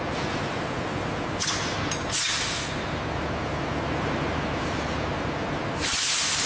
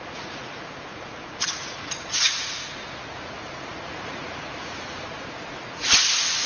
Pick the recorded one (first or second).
first